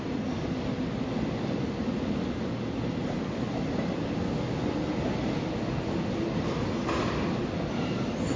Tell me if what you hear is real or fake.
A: real